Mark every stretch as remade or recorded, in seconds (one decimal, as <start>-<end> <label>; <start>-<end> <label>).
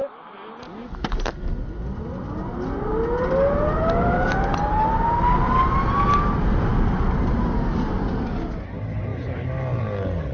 0.0-10.3 recorded